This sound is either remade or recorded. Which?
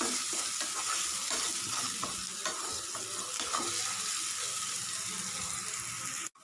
recorded